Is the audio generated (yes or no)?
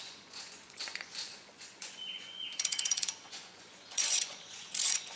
yes